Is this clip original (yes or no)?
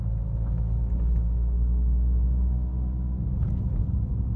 yes